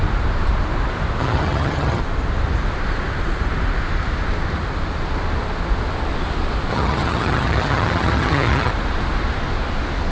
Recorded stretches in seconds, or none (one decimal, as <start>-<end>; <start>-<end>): 0.0-1.2; 2.0-6.7; 8.7-10.1